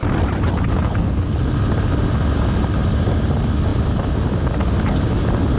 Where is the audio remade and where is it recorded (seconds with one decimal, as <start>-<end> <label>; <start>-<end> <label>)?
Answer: 0.0-0.7 recorded; 0.7-1.4 remade; 1.4-5.6 recorded